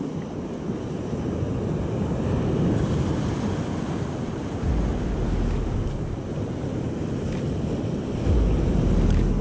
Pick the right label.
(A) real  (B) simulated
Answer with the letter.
A